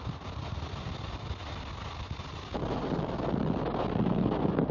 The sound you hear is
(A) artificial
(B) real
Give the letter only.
B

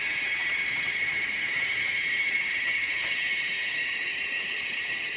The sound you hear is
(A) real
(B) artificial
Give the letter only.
B